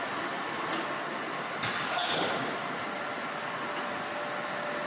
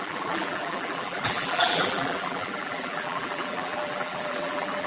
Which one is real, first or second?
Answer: first